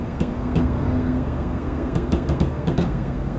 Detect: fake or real fake